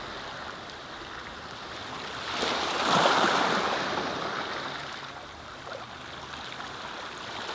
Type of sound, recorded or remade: recorded